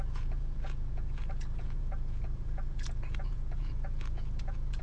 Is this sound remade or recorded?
remade